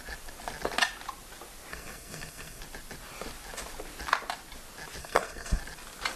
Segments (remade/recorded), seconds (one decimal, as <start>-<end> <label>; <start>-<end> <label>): 0.0-1.7 recorded; 1.7-2.6 remade; 2.6-5.0 recorded; 5.0-5.6 remade; 5.6-6.2 recorded